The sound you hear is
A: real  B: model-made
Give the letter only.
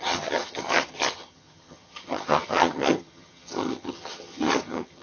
B